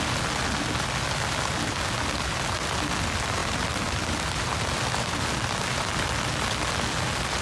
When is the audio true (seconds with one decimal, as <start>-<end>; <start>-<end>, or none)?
0.0-7.4